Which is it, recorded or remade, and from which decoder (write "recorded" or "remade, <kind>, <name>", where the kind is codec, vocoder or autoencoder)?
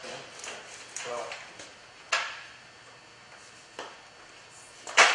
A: recorded